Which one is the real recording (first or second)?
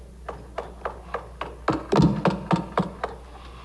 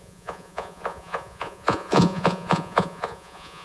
first